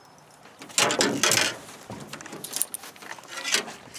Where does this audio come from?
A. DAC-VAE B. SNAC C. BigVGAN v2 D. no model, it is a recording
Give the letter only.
D